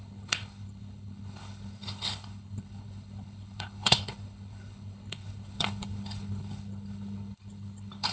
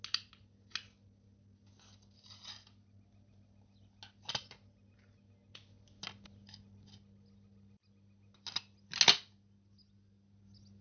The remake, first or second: first